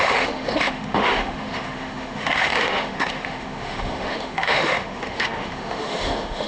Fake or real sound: fake